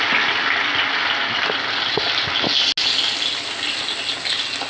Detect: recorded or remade recorded